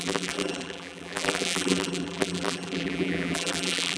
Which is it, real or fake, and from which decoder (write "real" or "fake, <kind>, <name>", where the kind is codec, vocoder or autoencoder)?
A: fake, vocoder, BigVGAN v2